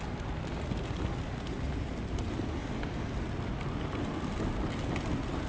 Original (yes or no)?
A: yes